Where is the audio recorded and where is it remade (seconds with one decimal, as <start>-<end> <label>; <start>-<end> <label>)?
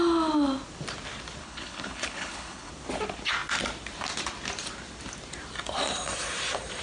0.0-1.4 recorded; 1.4-2.7 remade; 2.7-6.8 recorded